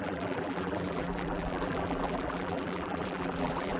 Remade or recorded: remade